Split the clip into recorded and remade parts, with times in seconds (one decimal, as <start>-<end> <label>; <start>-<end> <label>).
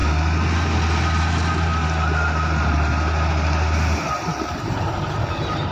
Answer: 0.0-4.3 recorded; 4.3-5.7 remade